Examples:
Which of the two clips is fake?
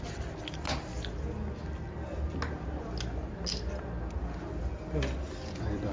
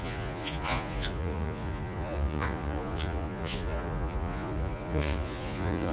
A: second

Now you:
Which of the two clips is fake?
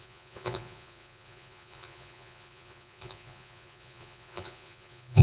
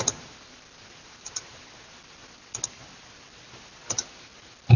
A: first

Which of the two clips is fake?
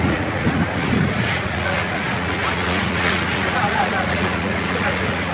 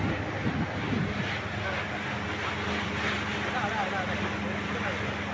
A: first